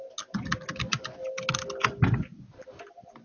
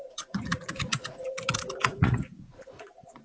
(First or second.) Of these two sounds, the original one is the first